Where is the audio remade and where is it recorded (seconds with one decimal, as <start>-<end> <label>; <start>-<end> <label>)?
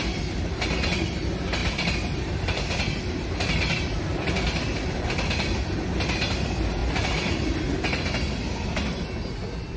0.0-1.6 recorded; 1.6-5.1 remade; 5.1-9.8 recorded